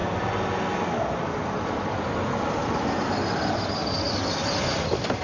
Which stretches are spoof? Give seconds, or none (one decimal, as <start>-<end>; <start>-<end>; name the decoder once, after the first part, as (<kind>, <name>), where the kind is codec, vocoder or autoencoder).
none